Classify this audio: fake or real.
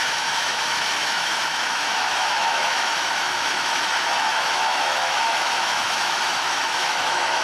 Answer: fake